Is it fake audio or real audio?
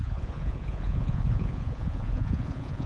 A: fake